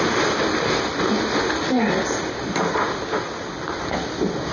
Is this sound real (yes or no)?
yes